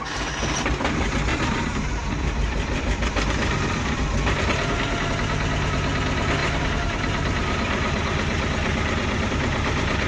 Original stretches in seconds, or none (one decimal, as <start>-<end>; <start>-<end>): 0.0-1.3; 5.1-6.4; 9.3-10.1